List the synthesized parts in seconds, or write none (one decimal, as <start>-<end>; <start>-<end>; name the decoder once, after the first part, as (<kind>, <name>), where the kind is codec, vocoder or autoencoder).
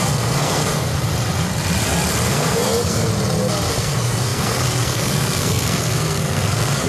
0.0-0.9 (codec, SNAC); 2.3-3.1; 3.7-6.9